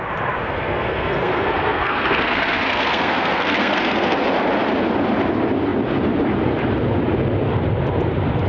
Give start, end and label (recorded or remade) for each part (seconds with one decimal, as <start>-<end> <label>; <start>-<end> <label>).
0.0-0.4 recorded; 0.4-4.2 remade; 4.2-8.5 recorded